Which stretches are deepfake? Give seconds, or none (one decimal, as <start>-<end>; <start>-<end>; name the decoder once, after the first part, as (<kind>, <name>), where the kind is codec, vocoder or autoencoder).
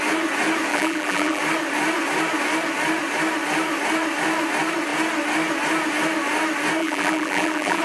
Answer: 0.7-1.4 (vocoder, BigVGAN v2); 6.8-7.8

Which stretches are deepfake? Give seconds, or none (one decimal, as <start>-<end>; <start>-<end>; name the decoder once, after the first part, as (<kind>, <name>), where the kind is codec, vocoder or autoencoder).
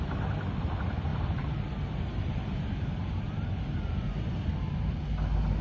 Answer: 1.1-4.5 (vocoder, BigVGAN v2)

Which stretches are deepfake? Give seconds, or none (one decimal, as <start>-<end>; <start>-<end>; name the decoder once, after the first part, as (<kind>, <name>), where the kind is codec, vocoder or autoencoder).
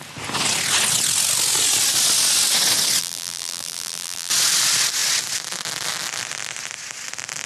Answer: 3.0-4.3 (vocoder, BigVGAN v2)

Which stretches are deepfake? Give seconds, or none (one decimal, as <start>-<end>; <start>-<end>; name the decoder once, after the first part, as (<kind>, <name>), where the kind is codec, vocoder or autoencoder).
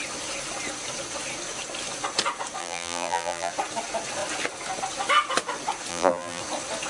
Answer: 2.6-3.5 (vocoder, BigVGAN v2); 5.9-6.4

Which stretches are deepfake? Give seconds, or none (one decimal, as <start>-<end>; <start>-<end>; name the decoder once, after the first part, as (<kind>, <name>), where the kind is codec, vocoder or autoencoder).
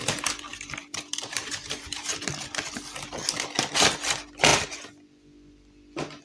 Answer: 0.5-2.0 (vocoder, BigVGAN v2)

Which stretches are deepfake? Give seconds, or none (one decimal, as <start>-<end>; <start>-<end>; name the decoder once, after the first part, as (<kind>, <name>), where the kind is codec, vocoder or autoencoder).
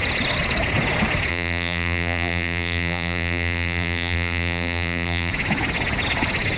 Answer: 1.3-5.3 (vocoder, BigVGAN v2)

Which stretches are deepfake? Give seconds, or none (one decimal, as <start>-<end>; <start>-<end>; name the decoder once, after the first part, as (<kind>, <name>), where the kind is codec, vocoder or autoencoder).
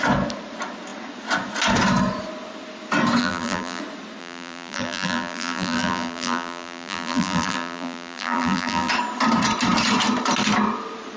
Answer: 3.2-3.8 (vocoder, BigVGAN v2); 4.2-8.9